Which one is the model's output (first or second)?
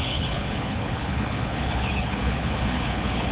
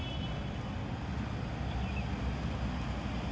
first